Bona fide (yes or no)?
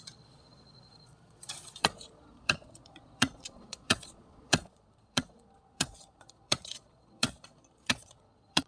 no